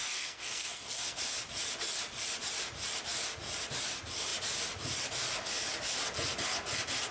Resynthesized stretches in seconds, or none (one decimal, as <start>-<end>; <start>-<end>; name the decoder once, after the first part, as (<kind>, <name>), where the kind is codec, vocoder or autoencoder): 0.0-1.2 (codec, SNAC)

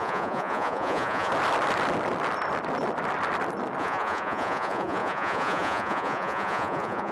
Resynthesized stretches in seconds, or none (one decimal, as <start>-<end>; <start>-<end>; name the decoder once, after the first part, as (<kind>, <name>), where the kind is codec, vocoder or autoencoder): 0.0-1.3 (vocoder, Vocos); 3.8-7.1

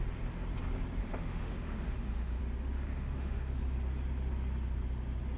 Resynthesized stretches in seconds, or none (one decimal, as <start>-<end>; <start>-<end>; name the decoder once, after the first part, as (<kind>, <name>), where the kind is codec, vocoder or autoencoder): 1.0-2.4 (autoencoder, DAC-VAE); 2.9-3.5

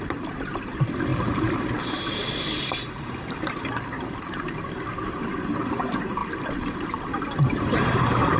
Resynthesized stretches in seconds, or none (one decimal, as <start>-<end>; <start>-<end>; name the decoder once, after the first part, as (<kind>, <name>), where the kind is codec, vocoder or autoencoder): 0.0-6.2 (vocoder, BigVGAN v2); 7.0-8.4

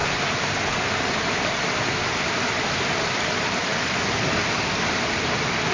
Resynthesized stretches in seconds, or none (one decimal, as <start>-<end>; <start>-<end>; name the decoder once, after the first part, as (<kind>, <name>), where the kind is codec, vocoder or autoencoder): none

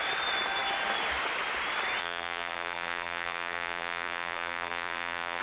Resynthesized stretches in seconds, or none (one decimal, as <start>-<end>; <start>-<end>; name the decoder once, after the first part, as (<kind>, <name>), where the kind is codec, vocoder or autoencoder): 2.0-5.4 (vocoder, BigVGAN v2)